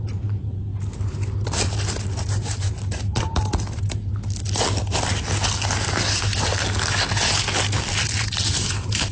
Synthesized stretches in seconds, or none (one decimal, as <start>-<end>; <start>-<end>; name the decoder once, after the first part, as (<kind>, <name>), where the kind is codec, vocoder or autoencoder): 0.0-0.7 (vocoder, BigVGAN v2); 2.2-4.1; 8.2-9.1